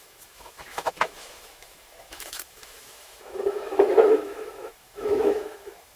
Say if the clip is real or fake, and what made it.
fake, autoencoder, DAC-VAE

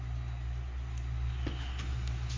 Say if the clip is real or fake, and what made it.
real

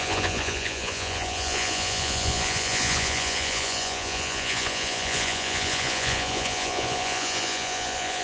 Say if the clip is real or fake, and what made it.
fake, vocoder, Vocos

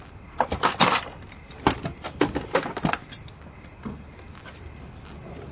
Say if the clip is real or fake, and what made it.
real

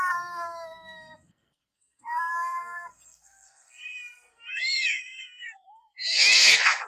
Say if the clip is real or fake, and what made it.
fake, codec, SNAC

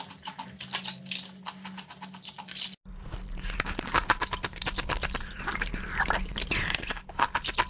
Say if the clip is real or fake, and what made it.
real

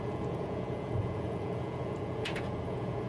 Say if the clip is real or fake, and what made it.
fake, vocoder, Vocos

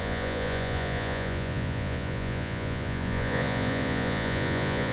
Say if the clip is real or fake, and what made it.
fake, vocoder, Vocos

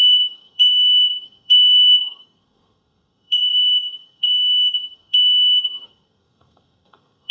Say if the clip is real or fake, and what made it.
fake, codec, SNAC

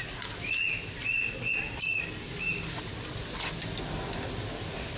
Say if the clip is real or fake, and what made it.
real